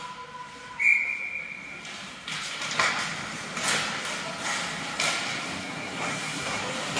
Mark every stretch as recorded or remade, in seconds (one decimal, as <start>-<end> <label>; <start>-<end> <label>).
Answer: 0.0-5.6 recorded; 5.6-6.6 remade; 6.6-7.0 recorded